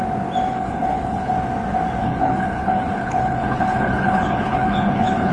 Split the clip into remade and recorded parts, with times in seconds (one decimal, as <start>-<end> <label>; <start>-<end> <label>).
0.0-0.5 recorded; 0.5-1.3 remade; 1.3-2.0 recorded; 2.0-5.3 remade